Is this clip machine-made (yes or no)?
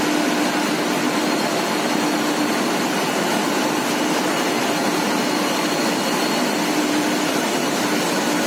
no